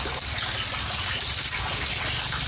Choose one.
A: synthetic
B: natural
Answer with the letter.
B